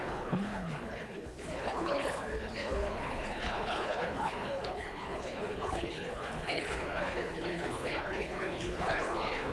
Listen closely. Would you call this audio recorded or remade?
remade